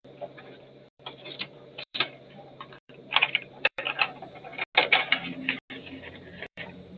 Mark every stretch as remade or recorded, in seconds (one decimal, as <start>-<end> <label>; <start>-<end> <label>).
0.0-4.5 remade; 4.5-6.0 recorded; 6.0-7.0 remade